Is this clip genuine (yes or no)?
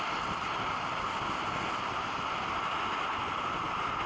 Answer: yes